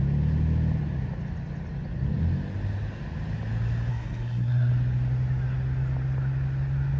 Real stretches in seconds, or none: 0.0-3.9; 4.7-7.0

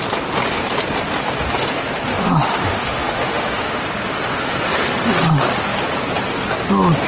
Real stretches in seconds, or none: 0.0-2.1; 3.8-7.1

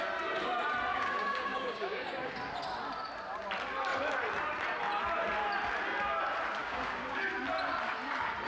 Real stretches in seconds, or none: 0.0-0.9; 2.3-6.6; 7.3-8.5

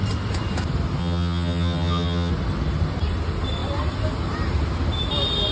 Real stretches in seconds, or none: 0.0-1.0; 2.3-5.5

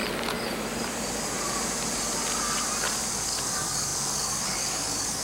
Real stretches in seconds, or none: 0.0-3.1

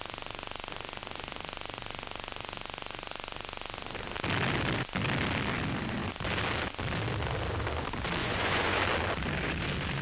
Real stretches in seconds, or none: 0.0-8.2; 8.8-10.0

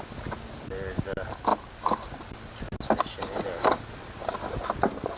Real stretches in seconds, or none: 0.0-5.2